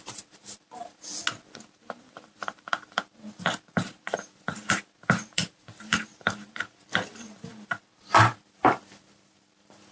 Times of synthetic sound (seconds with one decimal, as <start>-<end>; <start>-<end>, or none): 0.0-1.1; 1.7-9.9